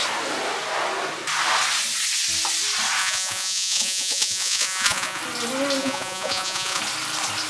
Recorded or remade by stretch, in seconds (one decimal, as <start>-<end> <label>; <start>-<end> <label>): 0.0-3.0 recorded; 3.0-5.2 remade; 5.2-5.8 recorded; 5.8-6.8 remade; 6.8-7.5 recorded